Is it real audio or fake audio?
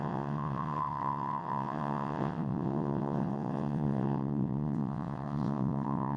fake